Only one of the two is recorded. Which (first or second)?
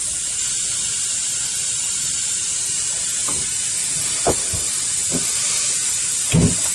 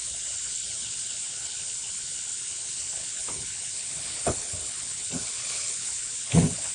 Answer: first